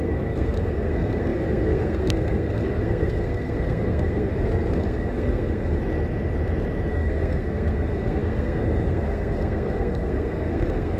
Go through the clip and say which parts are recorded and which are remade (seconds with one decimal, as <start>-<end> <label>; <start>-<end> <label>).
0.0-5.8 remade; 5.8-6.9 recorded; 6.9-11.0 remade

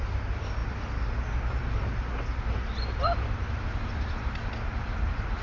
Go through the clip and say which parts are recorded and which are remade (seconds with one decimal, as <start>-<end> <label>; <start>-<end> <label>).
0.0-5.4 recorded

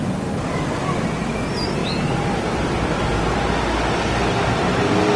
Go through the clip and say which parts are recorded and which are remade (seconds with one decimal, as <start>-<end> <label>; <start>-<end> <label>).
0.0-5.2 recorded